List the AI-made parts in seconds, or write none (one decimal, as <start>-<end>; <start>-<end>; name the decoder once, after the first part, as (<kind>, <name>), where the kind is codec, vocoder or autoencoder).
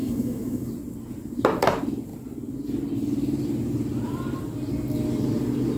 0.0-0.7 (autoencoder, DAC-VAE)